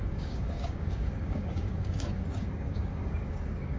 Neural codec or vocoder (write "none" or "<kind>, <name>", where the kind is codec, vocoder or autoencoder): codec, DAC